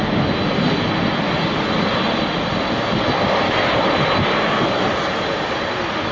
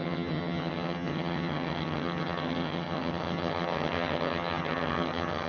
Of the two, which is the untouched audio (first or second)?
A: first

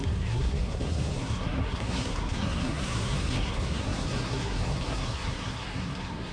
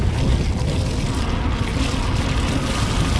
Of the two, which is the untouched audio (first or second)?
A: second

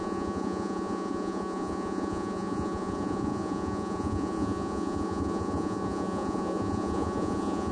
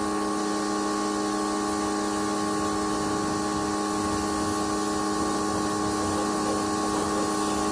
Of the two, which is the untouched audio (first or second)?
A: second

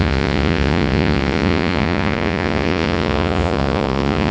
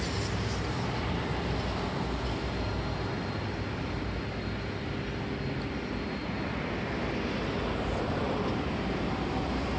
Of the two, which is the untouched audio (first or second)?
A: second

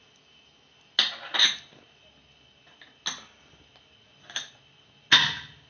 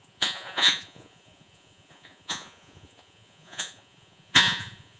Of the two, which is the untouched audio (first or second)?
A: first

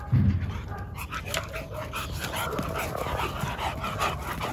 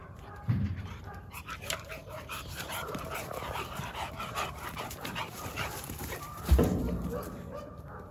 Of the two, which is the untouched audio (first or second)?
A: first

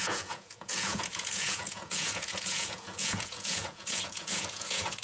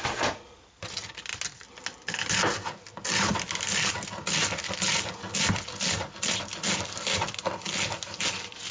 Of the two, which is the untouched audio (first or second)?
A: second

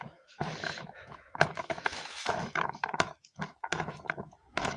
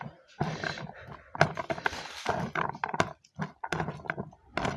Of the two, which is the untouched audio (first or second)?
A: second